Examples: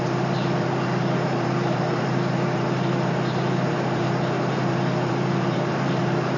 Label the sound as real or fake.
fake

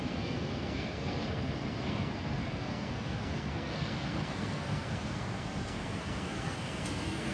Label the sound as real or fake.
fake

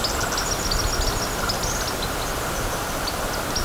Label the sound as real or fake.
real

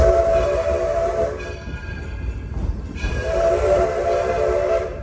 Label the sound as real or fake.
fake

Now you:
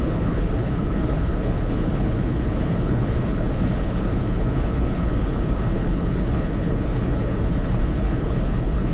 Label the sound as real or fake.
fake